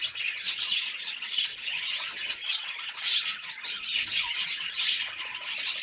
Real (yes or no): no